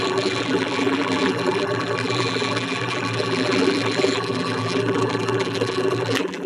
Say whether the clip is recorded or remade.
remade